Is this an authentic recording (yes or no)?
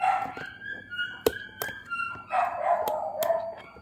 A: yes